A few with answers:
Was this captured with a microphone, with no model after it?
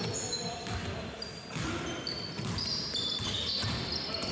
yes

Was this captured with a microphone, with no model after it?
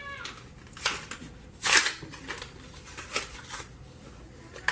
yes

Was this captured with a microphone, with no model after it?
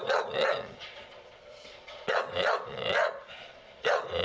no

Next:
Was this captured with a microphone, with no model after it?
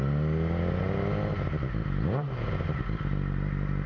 yes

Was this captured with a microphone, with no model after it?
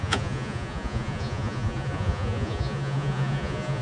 no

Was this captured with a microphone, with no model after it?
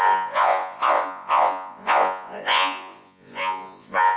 no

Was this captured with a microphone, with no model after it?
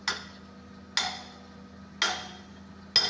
yes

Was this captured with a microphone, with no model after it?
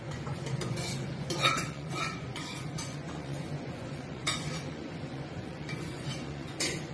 no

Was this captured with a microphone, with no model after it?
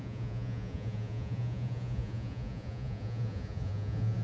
no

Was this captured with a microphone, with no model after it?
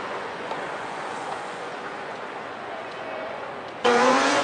no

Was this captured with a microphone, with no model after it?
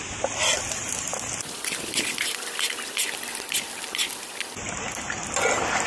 yes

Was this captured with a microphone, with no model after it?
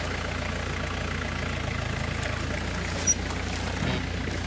yes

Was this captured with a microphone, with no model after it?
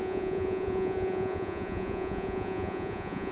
no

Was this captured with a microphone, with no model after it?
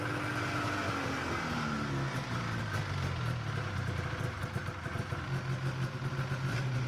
yes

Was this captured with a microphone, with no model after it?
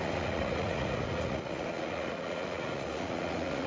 no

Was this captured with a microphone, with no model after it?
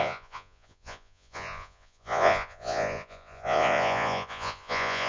no